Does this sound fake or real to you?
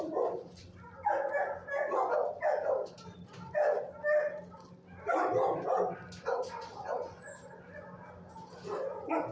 real